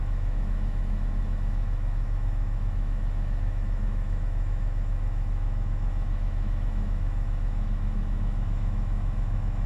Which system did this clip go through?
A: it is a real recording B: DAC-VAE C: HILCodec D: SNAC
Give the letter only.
B